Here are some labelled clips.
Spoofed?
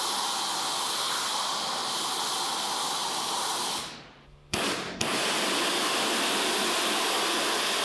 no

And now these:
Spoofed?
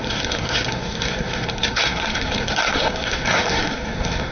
yes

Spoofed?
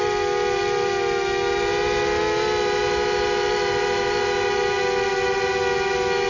no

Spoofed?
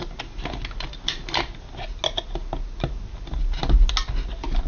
no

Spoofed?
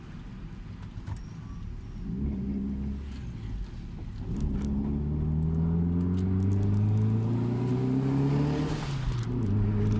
no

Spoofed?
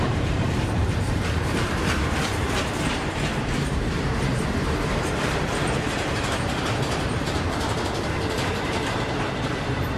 yes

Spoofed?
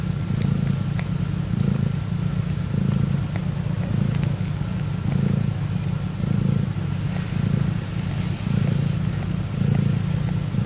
no